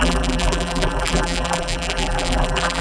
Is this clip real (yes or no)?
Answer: no